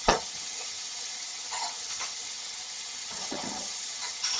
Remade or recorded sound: remade